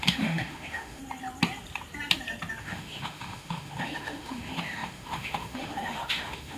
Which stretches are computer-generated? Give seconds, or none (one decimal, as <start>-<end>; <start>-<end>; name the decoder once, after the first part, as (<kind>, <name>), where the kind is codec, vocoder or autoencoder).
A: 0.0-1.0 (autoencoder, DAC-VAE); 2.6-6.6